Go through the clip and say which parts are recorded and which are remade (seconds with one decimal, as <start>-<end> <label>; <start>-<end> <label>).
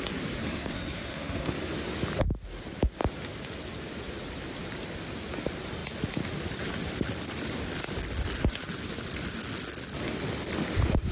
0.0-0.4 recorded; 0.4-1.5 remade; 1.5-11.1 recorded